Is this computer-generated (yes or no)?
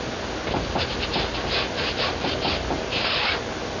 no